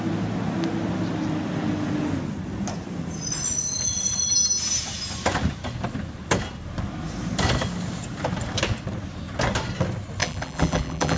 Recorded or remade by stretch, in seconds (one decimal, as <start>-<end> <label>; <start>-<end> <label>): 0.0-10.2 recorded; 10.2-11.2 remade

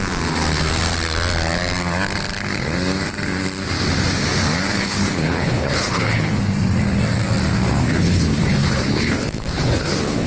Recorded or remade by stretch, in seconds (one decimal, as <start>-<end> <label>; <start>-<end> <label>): 0.0-4.8 recorded; 4.8-6.4 remade; 6.4-7.8 recorded; 7.8-10.3 remade

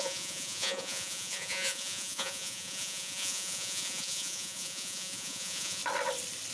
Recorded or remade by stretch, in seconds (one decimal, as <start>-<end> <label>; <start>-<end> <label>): 0.0-5.8 remade; 5.8-6.5 recorded

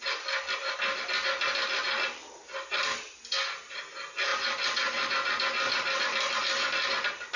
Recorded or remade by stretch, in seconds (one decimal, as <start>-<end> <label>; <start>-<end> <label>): 0.0-7.4 recorded